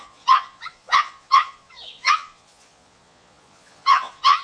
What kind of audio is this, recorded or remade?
remade